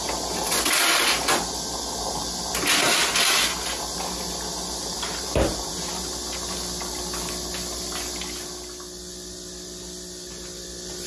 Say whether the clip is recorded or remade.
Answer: recorded